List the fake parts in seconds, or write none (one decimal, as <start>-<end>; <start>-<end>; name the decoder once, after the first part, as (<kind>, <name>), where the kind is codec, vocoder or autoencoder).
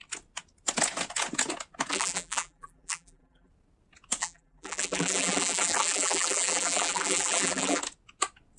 1.9-3.5 (vocoder, BigVGAN v2); 4.2-7.8